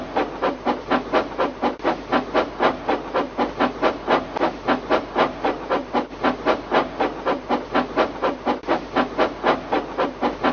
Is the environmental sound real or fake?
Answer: real